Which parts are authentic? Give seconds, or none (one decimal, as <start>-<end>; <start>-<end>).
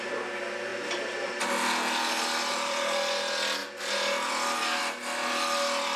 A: 0.0-6.0